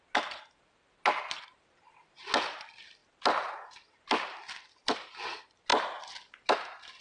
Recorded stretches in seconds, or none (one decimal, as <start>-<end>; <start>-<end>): 0.0-7.0